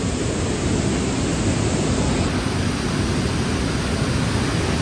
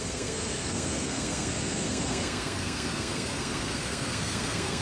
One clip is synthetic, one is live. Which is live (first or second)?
first